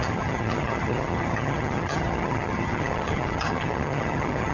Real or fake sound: fake